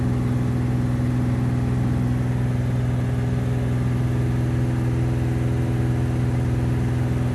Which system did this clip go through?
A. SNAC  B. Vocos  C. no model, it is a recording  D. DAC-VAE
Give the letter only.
C